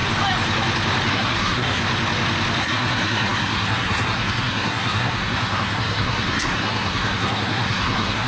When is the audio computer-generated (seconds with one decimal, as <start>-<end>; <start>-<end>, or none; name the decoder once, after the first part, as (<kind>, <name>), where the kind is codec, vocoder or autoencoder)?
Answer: 1.1-1.8 (codec, SNAC); 2.6-8.3